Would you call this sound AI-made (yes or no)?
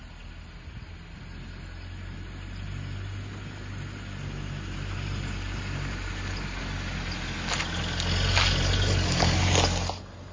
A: no